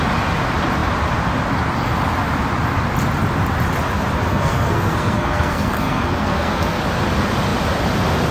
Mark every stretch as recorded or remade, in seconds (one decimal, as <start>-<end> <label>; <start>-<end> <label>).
0.0-4.3 recorded; 4.3-6.8 remade; 6.8-8.3 recorded